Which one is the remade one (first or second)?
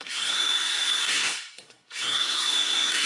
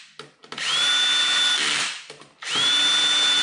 first